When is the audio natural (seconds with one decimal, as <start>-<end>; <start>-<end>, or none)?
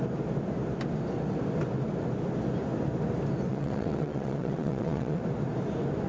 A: 0.0-3.5; 5.2-6.1